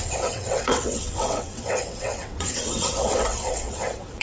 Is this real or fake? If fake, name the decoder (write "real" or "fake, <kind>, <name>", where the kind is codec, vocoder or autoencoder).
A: fake, vocoder, WaveNeXt